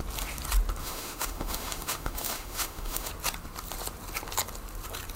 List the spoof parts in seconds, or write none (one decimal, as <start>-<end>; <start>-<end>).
0.8-3.1